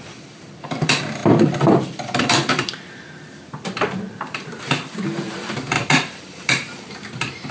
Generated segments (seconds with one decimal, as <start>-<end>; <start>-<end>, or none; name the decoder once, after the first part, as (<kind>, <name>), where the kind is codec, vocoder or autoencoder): 0.0-7.5 (vocoder, BigVGAN v2)